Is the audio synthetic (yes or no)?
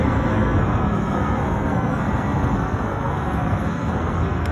yes